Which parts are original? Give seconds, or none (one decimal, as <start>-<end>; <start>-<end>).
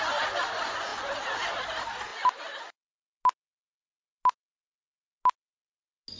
0.0-6.2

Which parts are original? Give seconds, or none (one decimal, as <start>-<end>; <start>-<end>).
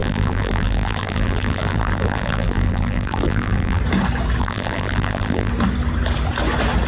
3.8-4.4; 5.5-6.9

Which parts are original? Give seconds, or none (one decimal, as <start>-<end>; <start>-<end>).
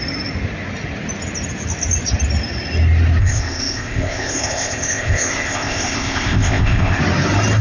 0.0-3.2; 7.0-7.6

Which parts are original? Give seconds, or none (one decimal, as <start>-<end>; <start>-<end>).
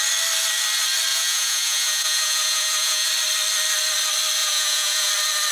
0.0-1.1; 3.1-4.4; 5.1-5.5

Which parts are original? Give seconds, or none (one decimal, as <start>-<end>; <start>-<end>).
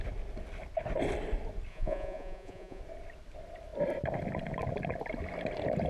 0.0-1.7; 2.8-5.9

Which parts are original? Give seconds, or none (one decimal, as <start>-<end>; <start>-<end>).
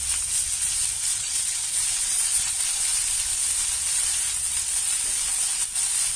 0.0-1.1; 2.5-6.2